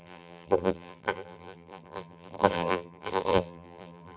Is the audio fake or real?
fake